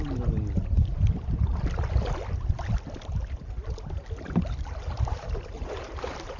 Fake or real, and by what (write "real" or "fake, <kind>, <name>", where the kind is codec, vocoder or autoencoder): real